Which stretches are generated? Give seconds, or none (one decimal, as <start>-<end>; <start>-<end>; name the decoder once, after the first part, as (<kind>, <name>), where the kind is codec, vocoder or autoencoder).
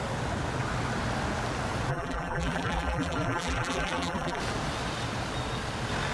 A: 1.9-4.4 (vocoder, BigVGAN v2)